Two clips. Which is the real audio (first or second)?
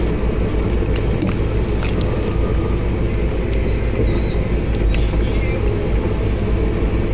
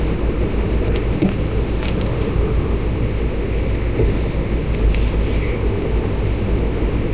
first